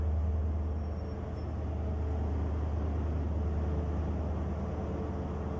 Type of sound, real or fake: real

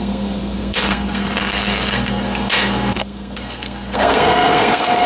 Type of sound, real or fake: fake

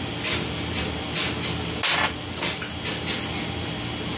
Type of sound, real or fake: real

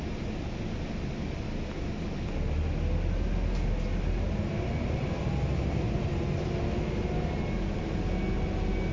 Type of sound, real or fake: real